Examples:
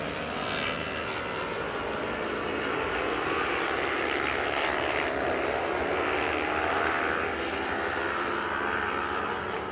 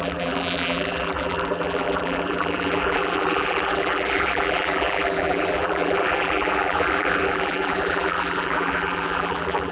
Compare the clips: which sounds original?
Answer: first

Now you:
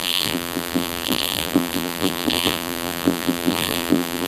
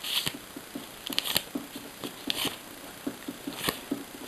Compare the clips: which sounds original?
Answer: second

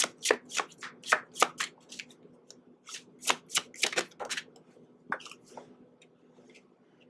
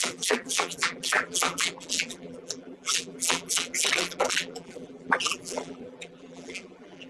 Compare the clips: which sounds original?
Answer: first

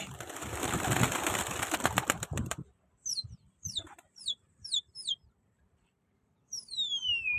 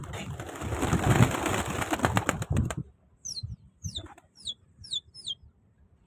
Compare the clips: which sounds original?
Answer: second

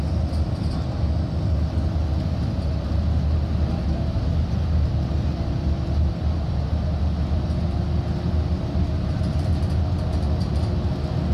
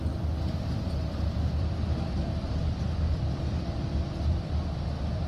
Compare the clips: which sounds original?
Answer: first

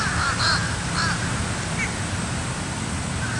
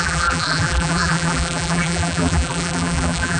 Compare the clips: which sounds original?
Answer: first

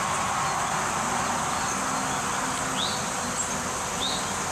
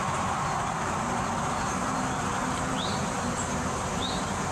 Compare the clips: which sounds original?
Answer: first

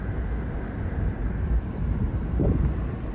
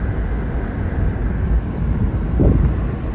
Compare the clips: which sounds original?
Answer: second